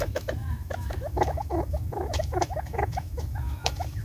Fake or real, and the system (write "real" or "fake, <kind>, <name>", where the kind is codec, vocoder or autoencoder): fake, autoencoder, DAC-VAE